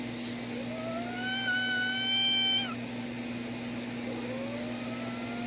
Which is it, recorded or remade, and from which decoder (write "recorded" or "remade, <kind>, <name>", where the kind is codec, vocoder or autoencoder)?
recorded